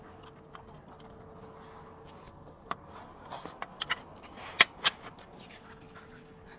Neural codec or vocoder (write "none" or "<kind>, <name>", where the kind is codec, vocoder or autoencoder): none